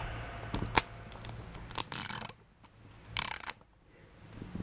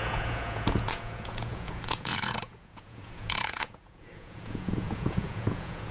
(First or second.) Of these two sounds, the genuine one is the first